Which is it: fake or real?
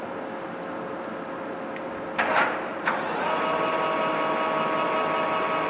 real